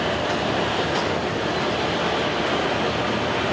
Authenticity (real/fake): real